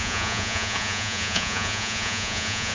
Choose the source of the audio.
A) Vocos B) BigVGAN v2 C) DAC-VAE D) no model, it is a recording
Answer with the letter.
A